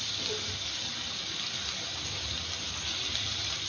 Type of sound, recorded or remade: recorded